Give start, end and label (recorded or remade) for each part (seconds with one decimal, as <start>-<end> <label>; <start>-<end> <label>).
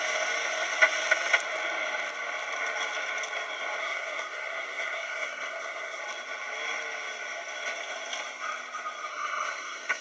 0.0-3.8 recorded; 3.8-6.0 remade; 6.0-9.1 recorded; 9.1-10.0 remade